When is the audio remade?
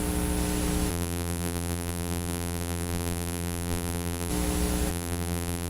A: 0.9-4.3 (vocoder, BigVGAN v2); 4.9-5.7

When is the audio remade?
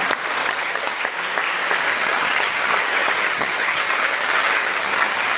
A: 0.4-1.0 (vocoder, HiFi-GAN); 1.9-5.4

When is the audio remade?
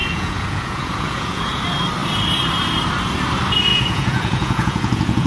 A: 0.0-1.6 (vocoder, Vocos); 3.7-5.3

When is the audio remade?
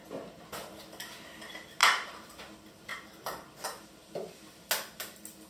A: 1.8-2.4 (vocoder, BigVGAN v2); 2.9-3.5